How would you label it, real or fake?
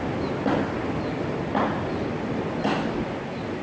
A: real